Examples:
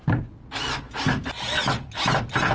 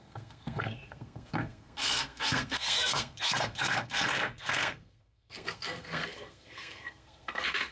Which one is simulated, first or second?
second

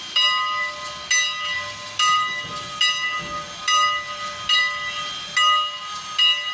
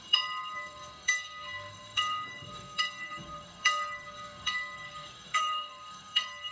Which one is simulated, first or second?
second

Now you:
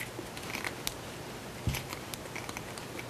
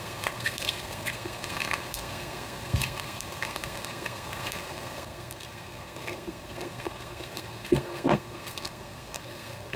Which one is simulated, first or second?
second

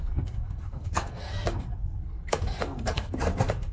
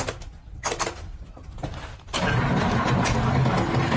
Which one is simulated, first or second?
first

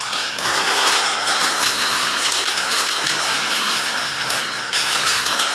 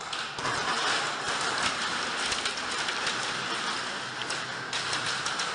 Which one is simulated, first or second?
first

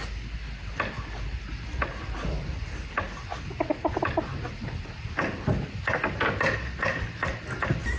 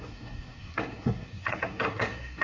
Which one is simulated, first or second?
second